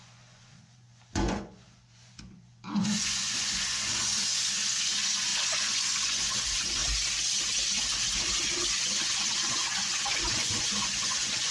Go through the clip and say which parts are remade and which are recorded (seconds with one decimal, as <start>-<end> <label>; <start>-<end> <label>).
0.0-6.8 remade; 6.8-8.7 recorded; 8.7-11.5 remade